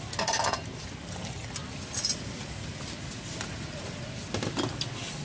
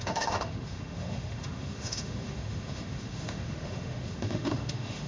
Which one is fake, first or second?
second